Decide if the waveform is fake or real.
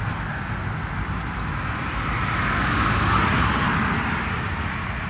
real